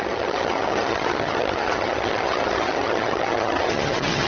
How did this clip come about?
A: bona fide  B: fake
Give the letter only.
B